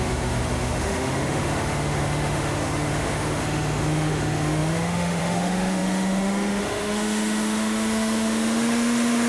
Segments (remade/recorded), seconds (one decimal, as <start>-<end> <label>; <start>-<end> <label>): 0.0-9.3 remade